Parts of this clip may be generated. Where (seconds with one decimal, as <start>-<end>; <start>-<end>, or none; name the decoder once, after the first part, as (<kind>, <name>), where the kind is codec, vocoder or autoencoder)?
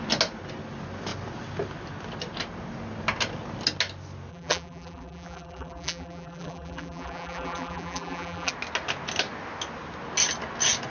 4.3-8.5 (vocoder, BigVGAN v2)